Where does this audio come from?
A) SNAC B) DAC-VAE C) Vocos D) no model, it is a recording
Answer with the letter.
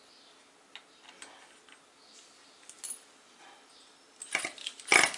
D